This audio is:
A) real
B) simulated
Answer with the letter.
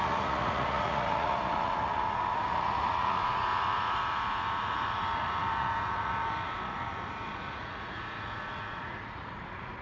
B